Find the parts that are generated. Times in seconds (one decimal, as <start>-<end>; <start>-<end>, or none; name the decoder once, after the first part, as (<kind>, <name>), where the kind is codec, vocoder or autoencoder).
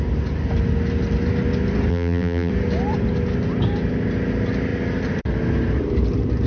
1.9-2.5 (vocoder, BigVGAN v2)